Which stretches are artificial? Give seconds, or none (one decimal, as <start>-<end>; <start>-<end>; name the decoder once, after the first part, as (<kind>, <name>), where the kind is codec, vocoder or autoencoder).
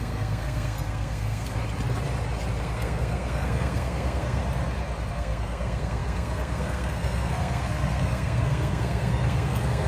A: 0.0-1.6 (codec, SNAC); 2.6-4.4; 5.1-9.9